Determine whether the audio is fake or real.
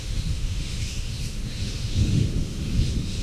fake